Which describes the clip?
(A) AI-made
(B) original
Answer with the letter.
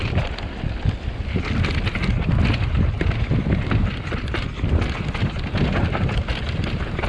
B